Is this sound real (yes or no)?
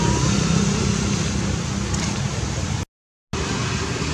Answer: yes